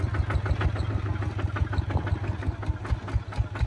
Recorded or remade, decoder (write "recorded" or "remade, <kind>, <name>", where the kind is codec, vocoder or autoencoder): recorded